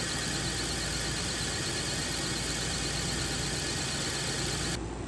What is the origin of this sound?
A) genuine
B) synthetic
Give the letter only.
A